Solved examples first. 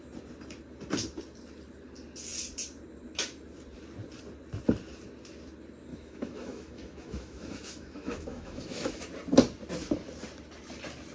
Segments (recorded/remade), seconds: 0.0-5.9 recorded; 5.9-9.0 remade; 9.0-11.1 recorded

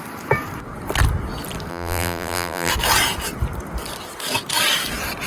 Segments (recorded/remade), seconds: 0.0-1.7 recorded; 1.7-2.7 remade; 2.7-5.3 recorded